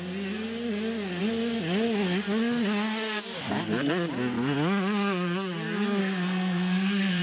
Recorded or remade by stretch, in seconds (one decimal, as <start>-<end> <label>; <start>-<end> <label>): 0.0-6.0 recorded; 6.0-7.2 remade